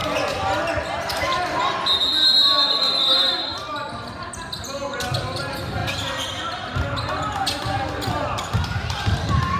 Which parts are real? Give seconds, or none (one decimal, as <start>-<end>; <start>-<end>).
0.0-9.6